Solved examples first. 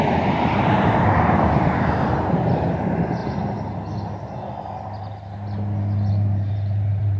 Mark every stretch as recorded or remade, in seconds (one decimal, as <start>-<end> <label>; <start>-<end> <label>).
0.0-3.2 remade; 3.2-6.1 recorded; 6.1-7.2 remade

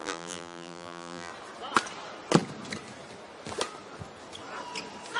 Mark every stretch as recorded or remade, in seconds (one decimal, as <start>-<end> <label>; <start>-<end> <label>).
0.0-1.3 remade; 1.3-5.2 recorded

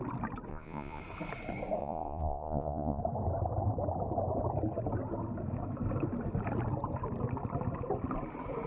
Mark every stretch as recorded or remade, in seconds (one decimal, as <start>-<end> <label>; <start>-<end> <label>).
0.0-0.5 recorded; 0.5-1.0 remade; 1.0-1.8 recorded; 1.8-3.0 remade; 3.0-8.7 recorded